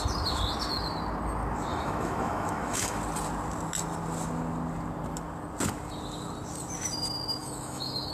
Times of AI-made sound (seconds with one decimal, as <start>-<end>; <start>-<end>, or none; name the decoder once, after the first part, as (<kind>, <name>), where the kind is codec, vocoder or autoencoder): 1.7-3.0 (autoencoder, DAC-VAE); 7.4-8.1